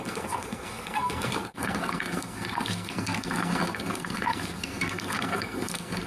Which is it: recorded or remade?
remade